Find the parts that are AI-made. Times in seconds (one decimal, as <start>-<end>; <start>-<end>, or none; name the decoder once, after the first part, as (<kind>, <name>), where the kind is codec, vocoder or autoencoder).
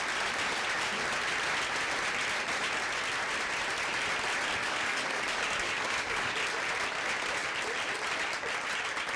4.6-6.3 (codec, DAC)